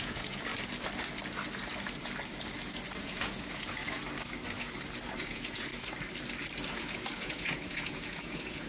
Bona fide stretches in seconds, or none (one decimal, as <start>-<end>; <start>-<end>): 0.5-3.0; 3.8-5.2; 5.7-6.7